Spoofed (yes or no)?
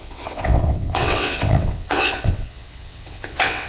yes